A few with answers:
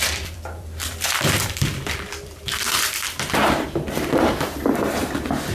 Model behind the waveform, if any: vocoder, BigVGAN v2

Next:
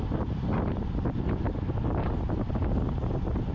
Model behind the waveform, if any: none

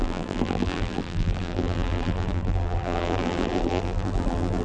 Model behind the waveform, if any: vocoder, BigVGAN v2